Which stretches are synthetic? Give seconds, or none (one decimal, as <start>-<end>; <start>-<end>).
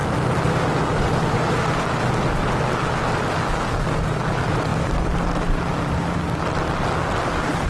none